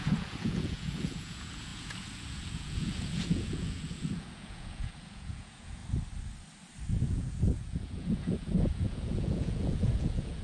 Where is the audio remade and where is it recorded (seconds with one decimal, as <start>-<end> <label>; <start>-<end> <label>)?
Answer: 0.0-5.8 remade; 5.8-7.0 recorded; 7.0-10.4 remade